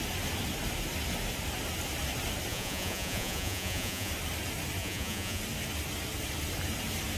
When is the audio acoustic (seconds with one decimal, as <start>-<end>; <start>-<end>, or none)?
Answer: 0.0-2.5; 4.1-4.8; 5.4-7.2

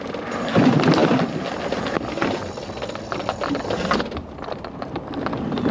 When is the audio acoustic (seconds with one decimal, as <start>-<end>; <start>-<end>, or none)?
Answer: 0.0-5.7

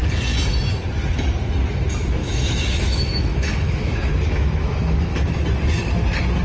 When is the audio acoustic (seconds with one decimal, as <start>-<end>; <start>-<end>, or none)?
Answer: 0.0-2.2; 5.4-6.4